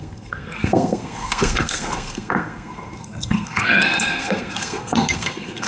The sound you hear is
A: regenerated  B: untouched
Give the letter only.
A